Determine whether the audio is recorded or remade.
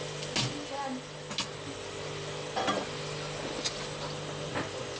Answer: recorded